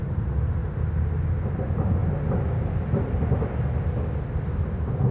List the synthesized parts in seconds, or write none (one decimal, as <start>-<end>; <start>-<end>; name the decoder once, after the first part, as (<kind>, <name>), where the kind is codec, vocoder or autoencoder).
0.0-0.6 (vocoder, BigVGAN v2); 1.5-2.0; 4.4-5.1